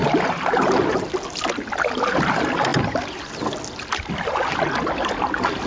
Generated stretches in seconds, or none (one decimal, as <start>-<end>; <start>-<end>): none

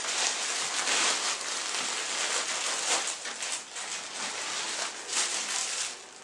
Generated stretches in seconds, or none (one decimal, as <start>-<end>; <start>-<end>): none

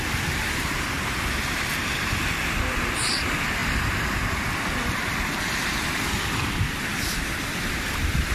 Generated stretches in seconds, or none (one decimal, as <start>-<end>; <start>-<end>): 0.0-3.6; 4.6-8.3

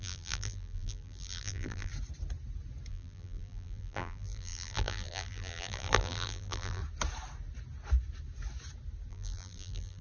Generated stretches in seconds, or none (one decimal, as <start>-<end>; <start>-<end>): 0.0-1.9; 2.9-6.8; 9.1-10.0

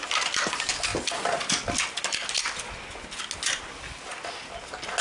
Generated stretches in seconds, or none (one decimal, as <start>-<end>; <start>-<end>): none